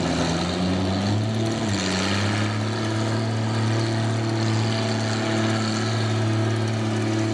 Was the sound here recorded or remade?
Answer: recorded